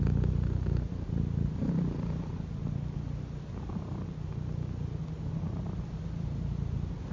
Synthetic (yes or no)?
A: no